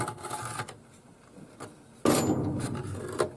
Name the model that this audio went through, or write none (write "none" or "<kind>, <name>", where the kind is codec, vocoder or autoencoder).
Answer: none